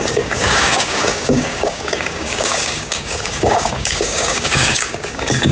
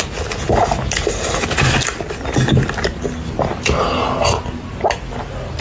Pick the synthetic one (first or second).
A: first